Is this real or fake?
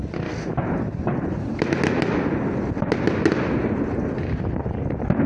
real